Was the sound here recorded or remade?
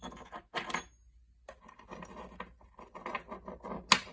recorded